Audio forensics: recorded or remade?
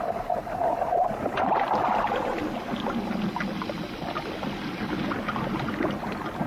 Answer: recorded